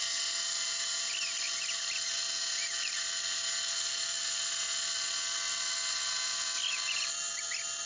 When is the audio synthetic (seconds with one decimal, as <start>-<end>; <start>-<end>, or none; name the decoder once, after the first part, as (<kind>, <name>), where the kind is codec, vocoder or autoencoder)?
none